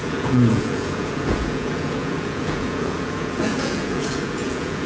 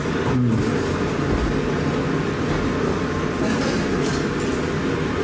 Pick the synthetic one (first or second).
first